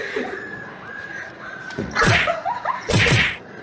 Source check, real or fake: fake